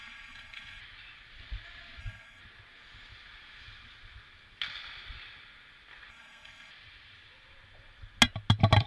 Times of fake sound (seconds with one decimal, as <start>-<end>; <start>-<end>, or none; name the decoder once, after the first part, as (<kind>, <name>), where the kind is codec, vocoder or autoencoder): 0.0-0.8 (codec, SNAC); 2.0-2.4; 6.1-6.7